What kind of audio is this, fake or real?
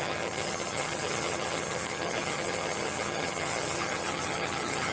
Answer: fake